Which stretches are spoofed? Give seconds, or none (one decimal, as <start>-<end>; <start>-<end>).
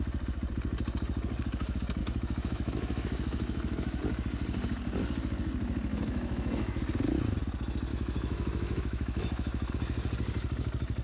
2.0-4.0; 5.9-6.8; 7.9-9.7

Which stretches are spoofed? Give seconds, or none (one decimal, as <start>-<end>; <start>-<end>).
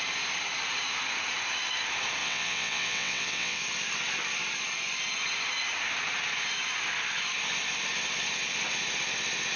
2.2-3.6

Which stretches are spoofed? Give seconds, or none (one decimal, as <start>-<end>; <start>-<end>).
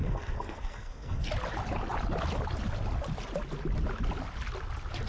0.0-1.3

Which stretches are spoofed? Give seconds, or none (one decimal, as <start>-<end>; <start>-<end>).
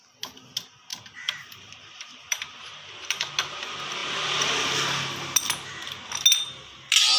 0.9-3.3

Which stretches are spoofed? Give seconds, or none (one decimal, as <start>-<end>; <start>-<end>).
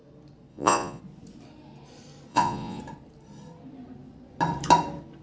0.5-1.0; 2.3-2.8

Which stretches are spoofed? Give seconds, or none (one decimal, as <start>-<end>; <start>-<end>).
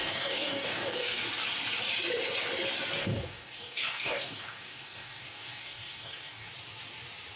0.0-1.2; 3.0-6.5